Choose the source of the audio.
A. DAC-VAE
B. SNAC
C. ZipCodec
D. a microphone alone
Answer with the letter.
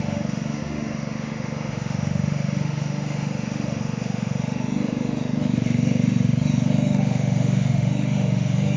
A